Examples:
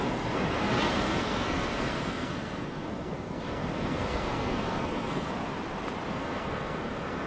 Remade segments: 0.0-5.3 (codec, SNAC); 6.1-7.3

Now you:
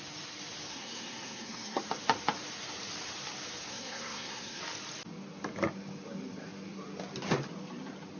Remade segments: 0.7-1.8 (codec, SNAC); 3.7-4.6

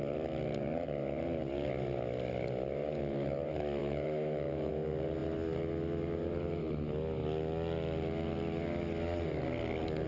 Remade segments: 3.8-4.7 (autoencoder, DAC-VAE)

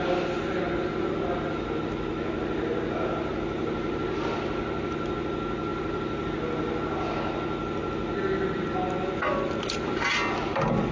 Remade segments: 3.3-4.3 (vocoder, BigVGAN v2); 5.7-6.3